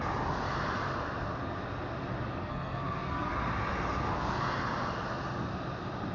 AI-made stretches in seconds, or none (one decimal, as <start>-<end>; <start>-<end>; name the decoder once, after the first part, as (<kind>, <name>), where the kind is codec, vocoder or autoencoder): 2.4-3.3 (codec, SNAC)